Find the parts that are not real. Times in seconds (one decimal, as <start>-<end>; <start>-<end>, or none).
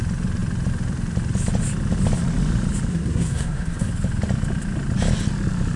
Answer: 2.9-3.9